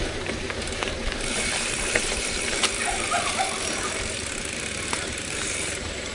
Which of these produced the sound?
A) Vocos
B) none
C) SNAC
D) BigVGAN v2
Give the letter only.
D